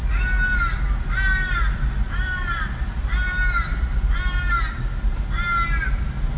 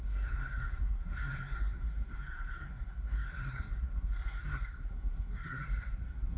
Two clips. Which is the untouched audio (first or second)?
first